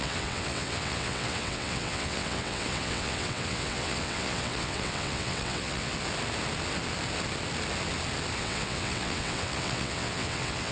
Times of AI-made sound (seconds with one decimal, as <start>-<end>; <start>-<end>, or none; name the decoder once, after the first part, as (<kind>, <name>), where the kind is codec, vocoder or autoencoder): 0.0-5.9 (vocoder, WaveNeXt); 8.4-10.7